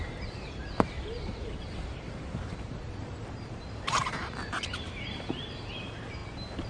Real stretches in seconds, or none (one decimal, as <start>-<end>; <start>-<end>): none